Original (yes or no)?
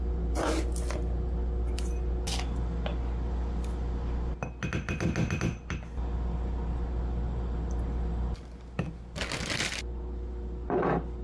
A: yes